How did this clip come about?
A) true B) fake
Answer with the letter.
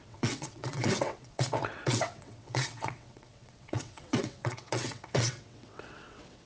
B